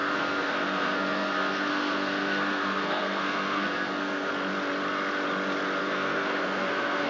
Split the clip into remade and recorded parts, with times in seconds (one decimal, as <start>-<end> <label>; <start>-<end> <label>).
0.0-4.3 remade; 4.3-5.8 recorded; 5.8-7.1 remade